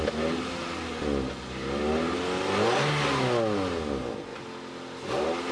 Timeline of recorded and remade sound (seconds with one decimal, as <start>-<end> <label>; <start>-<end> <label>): 0.0-4.3 recorded; 4.3-5.1 remade; 5.1-5.5 recorded